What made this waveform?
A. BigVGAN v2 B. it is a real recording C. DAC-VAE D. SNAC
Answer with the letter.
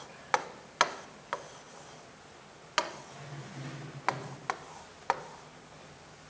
B